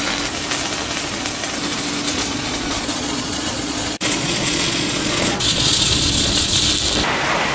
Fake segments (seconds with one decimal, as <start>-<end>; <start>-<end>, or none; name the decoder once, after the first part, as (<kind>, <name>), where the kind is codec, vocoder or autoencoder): 2.1-6.6 (vocoder, Vocos)